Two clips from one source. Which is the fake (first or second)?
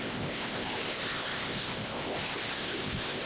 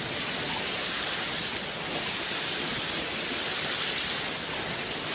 first